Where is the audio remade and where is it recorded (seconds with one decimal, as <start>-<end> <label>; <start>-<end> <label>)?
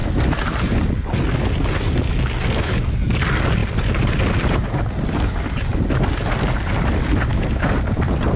0.0-8.4 recorded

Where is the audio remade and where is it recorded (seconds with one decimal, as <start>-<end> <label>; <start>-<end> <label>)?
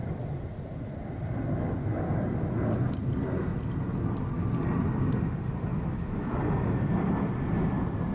0.0-5.7 recorded; 5.7-6.4 remade; 6.4-8.1 recorded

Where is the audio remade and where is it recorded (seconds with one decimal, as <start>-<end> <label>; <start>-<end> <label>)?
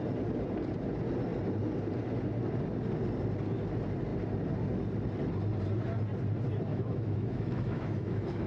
0.0-6.7 recorded; 6.7-8.5 remade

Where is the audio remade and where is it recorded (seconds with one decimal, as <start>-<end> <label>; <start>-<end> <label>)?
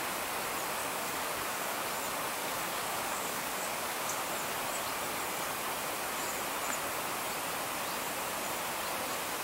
0.0-0.8 recorded; 0.8-1.8 remade; 1.8-2.4 recorded; 2.4-4.2 remade; 4.2-9.4 recorded